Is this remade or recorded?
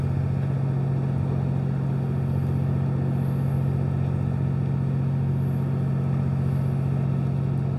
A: recorded